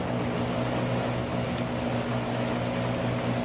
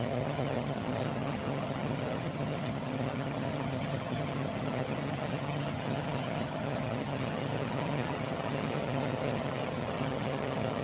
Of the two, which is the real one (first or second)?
first